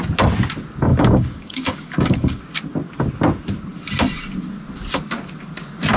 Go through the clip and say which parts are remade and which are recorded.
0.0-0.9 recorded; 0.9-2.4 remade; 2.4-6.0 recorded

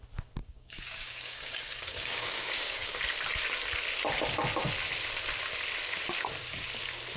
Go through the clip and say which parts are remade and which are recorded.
0.0-0.4 recorded; 0.4-2.9 remade; 2.9-7.2 recorded

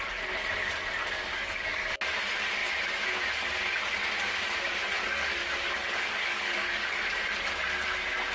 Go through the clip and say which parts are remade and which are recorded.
0.0-1.3 recorded; 1.3-1.9 remade; 1.9-5.0 recorded; 5.0-7.0 remade; 7.0-8.3 recorded

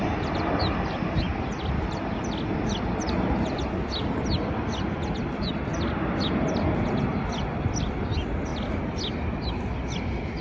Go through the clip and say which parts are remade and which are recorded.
0.0-10.4 recorded